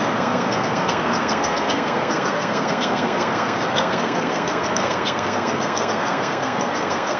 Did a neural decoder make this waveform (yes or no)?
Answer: yes